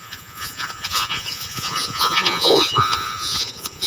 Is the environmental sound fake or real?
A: fake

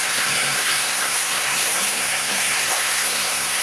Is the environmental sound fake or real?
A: fake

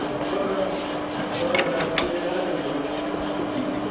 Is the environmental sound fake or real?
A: real